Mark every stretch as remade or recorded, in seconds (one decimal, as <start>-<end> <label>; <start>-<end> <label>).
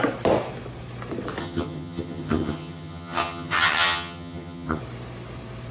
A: 0.0-1.4 recorded; 1.4-4.8 remade; 4.8-5.7 recorded